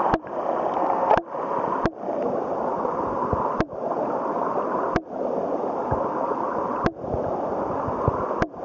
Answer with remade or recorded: recorded